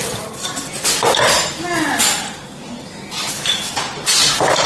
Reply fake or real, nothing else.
real